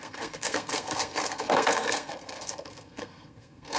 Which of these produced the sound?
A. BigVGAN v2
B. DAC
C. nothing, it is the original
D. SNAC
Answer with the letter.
D